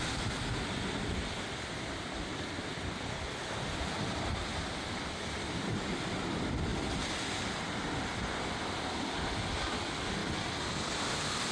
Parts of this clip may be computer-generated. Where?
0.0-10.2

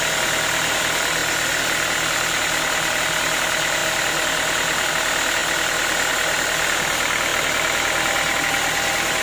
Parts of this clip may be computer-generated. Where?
none